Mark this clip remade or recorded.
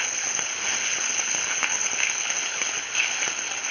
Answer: remade